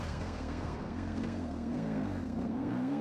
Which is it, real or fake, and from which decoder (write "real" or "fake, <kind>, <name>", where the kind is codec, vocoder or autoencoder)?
fake, codec, SNAC